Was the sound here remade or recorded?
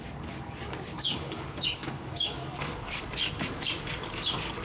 remade